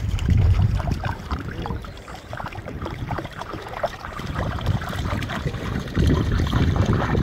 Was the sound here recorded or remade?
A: remade